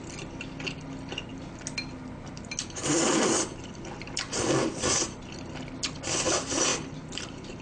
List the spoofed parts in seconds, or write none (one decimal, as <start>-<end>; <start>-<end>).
6.7-7.6